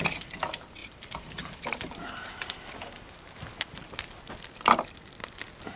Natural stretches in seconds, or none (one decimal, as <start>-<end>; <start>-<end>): 0.0-0.8; 4.3-5.8